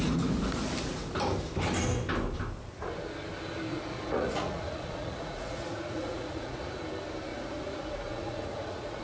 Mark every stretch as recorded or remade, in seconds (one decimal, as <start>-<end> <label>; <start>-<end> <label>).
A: 0.0-3.7 recorded; 3.7-6.8 remade; 6.8-7.3 recorded; 7.3-9.0 remade

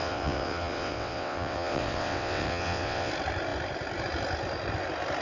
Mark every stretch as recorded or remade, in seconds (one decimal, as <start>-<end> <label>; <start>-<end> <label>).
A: 0.0-3.1 remade; 3.1-5.2 recorded